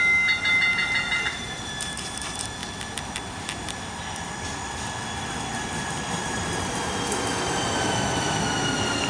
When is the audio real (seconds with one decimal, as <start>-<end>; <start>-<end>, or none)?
0.0-9.1